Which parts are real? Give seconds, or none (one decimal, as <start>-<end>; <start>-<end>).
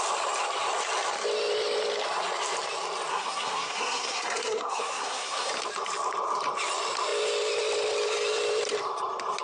0.0-3.1; 5.5-9.4